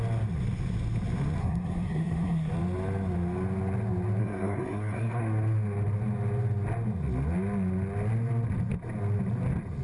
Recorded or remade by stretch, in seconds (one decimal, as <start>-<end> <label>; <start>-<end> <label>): 0.0-1.4 recorded; 1.4-2.5 remade; 2.5-4.2 recorded; 4.2-5.2 remade; 5.2-9.8 recorded